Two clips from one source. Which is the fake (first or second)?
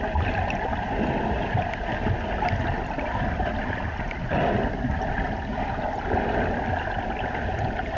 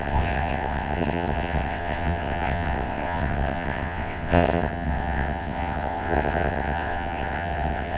second